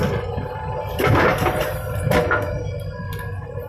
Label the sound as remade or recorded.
recorded